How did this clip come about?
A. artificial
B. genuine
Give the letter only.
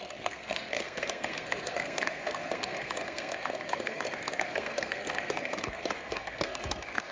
A